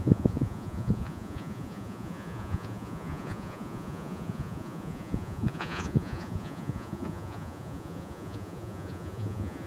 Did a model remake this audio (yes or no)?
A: yes